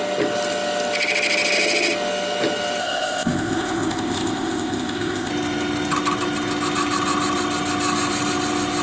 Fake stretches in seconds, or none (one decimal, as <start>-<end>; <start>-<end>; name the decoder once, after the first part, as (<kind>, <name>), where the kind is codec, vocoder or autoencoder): 2.8-5.3 (codec, ZipCodec)